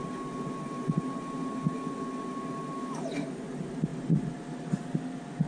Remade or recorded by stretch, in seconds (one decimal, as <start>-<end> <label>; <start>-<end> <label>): 0.0-5.5 recorded